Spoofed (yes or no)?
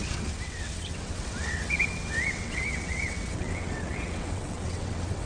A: yes